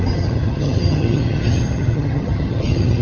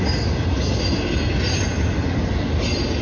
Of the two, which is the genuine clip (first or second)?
second